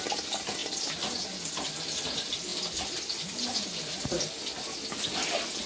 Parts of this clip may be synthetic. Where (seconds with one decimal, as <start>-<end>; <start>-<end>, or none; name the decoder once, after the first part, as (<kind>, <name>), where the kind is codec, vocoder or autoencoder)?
none